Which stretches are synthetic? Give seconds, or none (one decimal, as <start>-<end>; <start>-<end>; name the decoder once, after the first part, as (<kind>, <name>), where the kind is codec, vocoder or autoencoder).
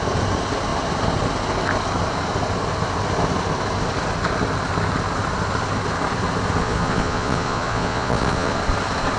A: 6.6-8.6 (vocoder, Vocos)